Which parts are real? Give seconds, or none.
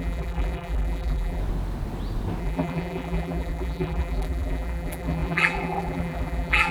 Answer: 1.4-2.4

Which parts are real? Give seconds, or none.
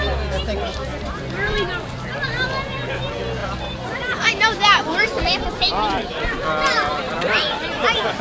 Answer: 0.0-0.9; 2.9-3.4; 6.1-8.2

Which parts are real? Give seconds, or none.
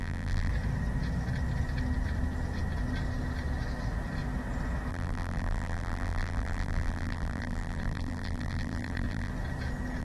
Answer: 0.5-4.9; 9.3-10.0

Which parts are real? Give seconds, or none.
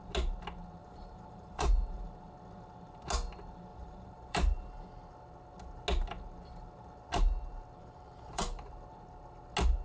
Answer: 0.0-0.8; 2.1-3.7; 4.9-7.8; 8.7-9.8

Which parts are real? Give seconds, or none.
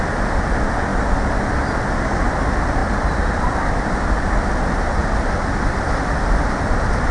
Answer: 0.0-2.8; 3.9-5.0